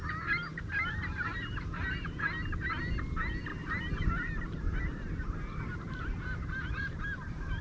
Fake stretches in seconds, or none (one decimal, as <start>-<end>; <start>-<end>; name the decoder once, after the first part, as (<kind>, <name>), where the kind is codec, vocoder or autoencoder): 0.5-2.2 (vocoder, BigVGAN v2); 3.5-7.6